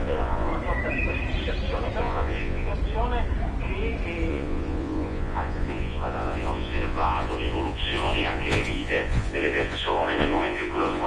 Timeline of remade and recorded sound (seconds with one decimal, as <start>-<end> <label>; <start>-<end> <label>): 0.0-0.5 remade; 0.5-2.0 recorded; 2.0-2.7 remade; 2.7-4.3 recorded; 4.3-11.1 remade